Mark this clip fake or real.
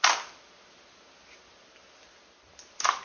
real